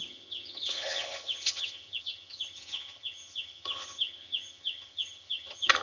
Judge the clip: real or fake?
fake